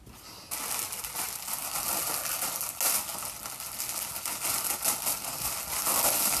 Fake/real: real